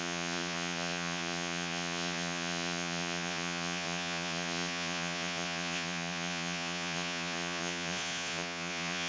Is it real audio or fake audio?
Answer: fake